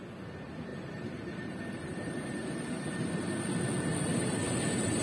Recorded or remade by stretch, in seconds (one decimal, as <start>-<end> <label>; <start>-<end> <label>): 0.0-0.7 recorded; 0.7-3.4 remade; 3.4-4.1 recorded; 4.1-5.0 remade